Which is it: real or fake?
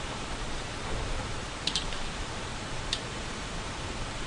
fake